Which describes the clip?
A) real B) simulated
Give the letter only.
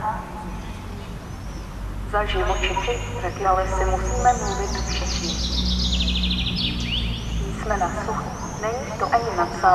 A